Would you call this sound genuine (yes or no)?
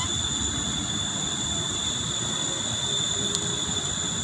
yes